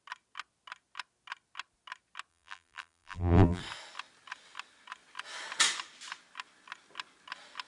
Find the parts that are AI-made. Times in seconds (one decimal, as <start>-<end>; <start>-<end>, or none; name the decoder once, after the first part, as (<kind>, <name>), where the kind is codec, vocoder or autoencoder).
2.3-3.6 (vocoder, BigVGAN v2)